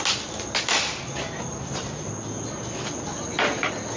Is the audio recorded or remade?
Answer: recorded